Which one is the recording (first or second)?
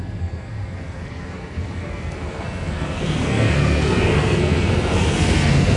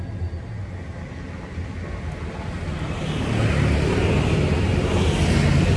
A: second